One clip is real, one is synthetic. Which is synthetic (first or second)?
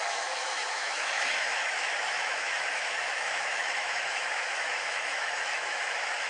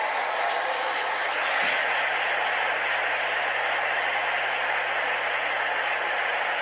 first